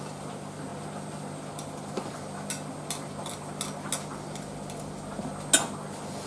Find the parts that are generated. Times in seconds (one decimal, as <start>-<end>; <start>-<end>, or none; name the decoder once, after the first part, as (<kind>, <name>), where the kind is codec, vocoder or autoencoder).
none